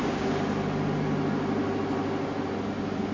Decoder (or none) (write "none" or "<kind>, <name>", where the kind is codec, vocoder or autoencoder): none